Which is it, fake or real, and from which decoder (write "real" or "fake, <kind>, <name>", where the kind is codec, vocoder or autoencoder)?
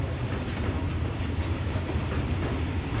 fake, vocoder, BigVGAN v2